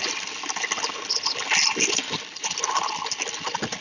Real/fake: real